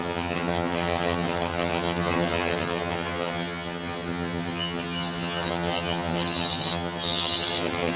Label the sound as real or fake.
fake